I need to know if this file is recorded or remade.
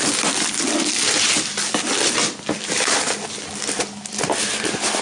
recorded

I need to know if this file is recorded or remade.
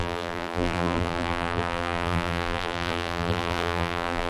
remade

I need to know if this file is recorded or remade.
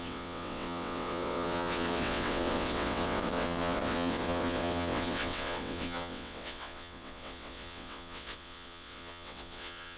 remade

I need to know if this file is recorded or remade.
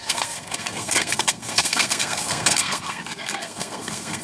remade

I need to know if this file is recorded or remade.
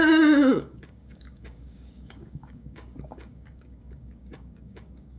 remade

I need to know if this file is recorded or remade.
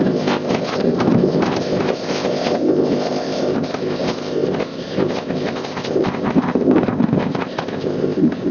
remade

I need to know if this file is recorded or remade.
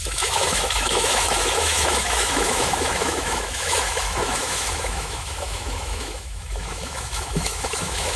remade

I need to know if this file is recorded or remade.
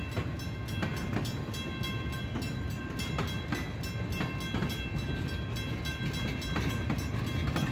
recorded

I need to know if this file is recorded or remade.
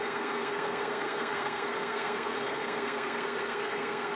remade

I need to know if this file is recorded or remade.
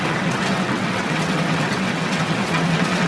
remade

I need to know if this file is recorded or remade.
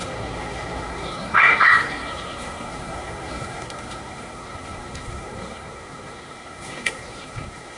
remade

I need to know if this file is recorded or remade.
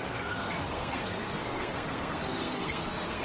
remade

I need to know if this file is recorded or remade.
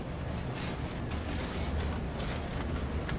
recorded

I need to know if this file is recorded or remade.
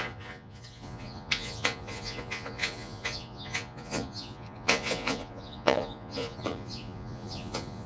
remade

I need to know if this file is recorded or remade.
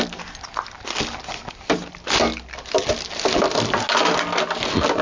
recorded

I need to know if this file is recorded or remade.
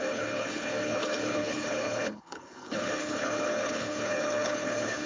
remade